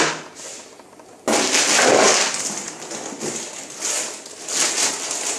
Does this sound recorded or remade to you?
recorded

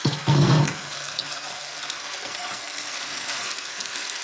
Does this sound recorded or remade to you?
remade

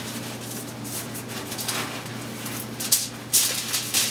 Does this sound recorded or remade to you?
recorded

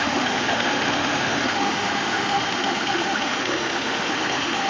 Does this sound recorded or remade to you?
remade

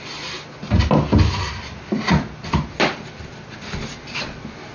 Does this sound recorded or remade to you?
recorded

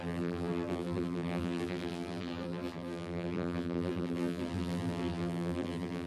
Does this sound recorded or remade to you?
remade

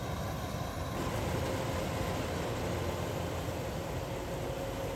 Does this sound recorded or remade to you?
recorded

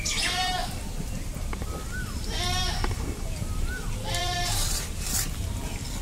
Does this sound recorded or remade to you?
remade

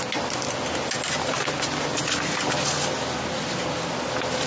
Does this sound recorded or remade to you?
recorded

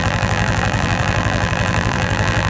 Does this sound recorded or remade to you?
remade